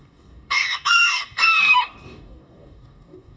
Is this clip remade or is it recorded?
remade